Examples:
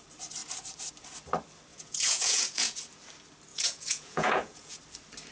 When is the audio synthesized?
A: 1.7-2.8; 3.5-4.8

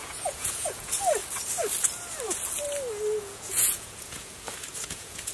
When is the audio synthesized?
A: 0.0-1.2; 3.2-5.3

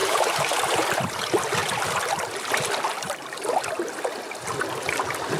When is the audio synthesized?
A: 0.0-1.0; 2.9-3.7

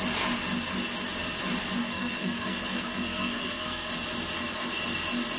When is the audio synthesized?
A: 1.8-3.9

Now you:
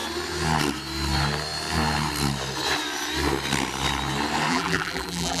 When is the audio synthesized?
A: 4.5-5.4